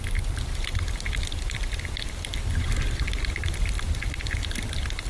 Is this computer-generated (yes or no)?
no